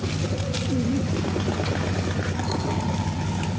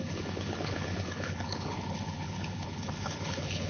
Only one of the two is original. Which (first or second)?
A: first